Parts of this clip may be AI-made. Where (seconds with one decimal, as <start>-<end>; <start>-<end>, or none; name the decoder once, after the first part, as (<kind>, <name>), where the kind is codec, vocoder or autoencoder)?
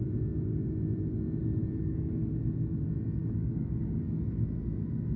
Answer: 1.4-2.3 (codec, DAC); 3.2-4.2